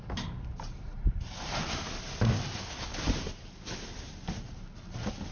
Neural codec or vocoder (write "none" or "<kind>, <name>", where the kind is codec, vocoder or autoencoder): none